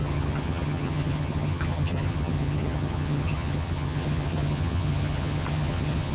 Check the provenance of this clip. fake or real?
fake